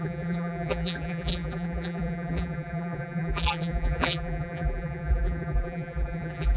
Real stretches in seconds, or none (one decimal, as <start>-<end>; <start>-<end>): none